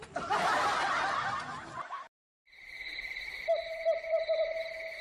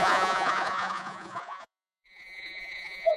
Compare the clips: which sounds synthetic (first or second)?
second